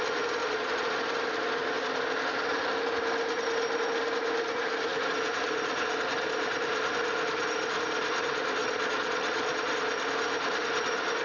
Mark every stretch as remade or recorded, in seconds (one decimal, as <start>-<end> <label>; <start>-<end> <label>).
0.0-0.4 recorded; 0.4-0.9 remade; 0.9-8.6 recorded; 8.6-9.7 remade; 9.7-11.2 recorded

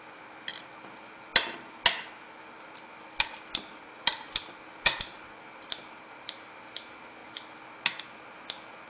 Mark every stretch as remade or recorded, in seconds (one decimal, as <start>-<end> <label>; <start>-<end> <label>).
0.0-8.9 recorded

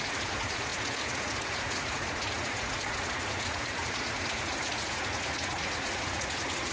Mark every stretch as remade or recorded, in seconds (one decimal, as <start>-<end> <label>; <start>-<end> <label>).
0.0-6.7 remade

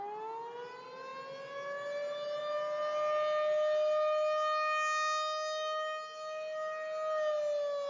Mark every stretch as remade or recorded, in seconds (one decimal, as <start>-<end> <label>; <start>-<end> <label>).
0.0-7.9 recorded

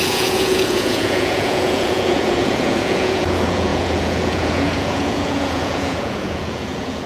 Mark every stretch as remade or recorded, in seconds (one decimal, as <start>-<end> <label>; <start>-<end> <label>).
0.0-7.1 remade

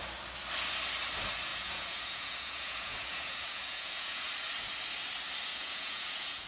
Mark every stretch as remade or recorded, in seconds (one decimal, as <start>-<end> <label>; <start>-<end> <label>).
0.0-1.5 recorded; 1.5-4.3 remade; 4.3-5.5 recorded; 5.5-6.5 remade